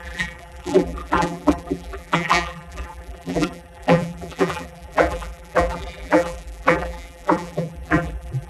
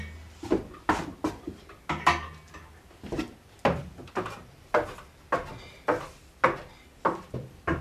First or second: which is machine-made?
first